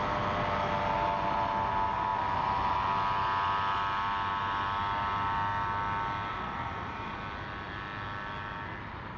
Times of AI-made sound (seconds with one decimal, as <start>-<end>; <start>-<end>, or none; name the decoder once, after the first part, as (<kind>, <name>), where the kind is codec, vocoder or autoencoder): 6.3-7.2 (vocoder, Vocos)